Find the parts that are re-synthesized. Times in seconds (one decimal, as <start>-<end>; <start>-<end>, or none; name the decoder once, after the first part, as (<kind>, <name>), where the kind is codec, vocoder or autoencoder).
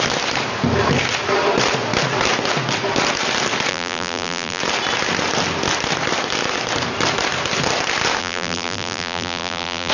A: 3.7-4.6 (vocoder, BigVGAN v2); 8.2-9.9